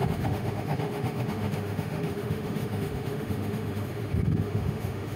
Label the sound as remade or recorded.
remade